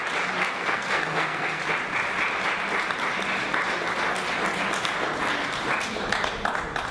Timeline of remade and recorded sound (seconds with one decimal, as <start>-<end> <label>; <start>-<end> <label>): 0.0-0.4 recorded; 0.4-1.6 remade; 1.6-6.9 recorded